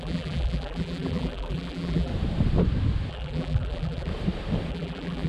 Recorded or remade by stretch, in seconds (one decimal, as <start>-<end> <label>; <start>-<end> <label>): 0.0-2.1 remade; 2.1-3.1 recorded; 3.1-4.1 remade; 4.1-4.7 recorded; 4.7-5.3 remade